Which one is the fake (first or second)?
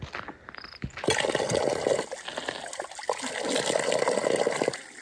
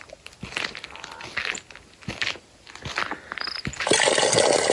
second